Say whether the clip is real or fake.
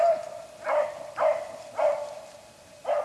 real